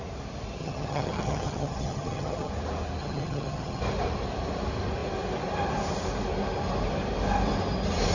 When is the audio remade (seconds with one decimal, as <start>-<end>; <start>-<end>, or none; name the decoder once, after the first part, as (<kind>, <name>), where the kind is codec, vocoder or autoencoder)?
0.6-2.5 (vocoder, HiFi-GAN); 3.0-3.8